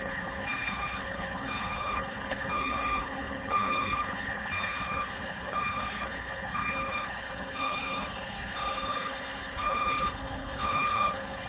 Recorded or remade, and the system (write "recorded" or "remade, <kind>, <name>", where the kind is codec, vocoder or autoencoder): remade, codec, HILCodec